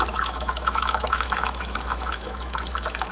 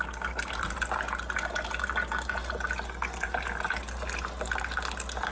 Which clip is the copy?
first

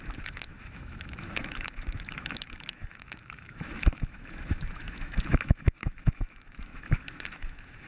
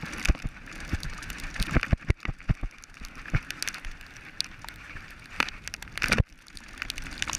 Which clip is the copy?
first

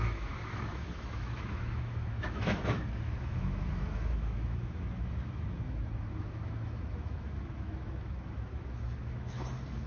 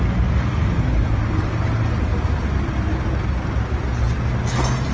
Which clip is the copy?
first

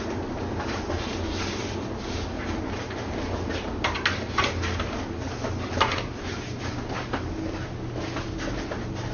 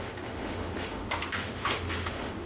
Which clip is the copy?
second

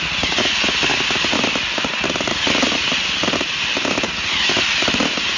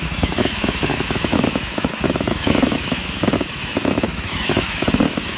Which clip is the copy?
second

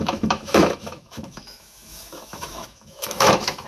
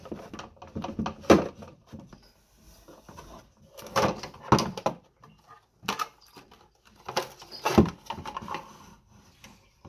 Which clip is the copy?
first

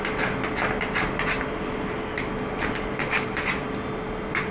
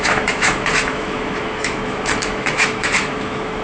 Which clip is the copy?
second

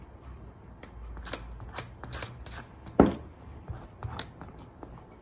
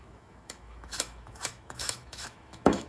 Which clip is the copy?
second